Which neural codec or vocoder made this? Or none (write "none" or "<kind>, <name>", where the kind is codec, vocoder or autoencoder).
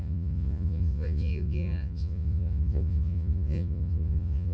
vocoder, Vocos